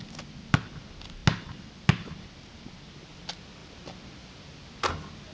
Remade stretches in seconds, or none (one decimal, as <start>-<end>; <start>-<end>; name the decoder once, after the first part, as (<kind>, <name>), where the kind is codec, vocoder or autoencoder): none